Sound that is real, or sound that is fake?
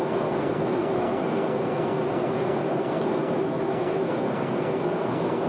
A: fake